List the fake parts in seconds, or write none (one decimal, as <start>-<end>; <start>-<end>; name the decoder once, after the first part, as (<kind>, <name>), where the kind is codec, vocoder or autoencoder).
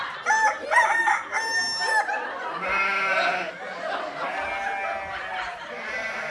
none